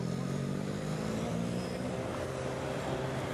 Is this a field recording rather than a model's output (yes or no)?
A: yes